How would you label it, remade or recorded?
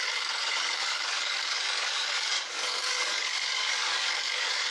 remade